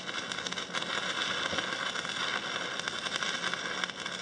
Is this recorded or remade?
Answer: recorded